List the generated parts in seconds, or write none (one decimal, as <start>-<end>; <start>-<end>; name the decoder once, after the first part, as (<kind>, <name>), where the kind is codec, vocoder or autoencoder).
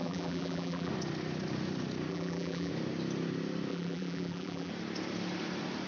0.0-0.9 (vocoder, BigVGAN v2); 2.1-2.7; 3.7-4.7